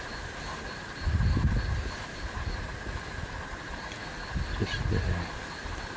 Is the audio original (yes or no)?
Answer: yes